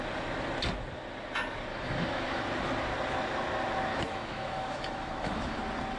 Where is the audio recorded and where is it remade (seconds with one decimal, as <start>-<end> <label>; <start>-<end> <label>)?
0.0-1.7 recorded; 1.7-2.4 remade; 2.4-3.9 recorded; 3.9-5.6 remade; 5.6-6.0 recorded